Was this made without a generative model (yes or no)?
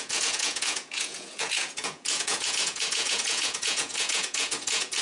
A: no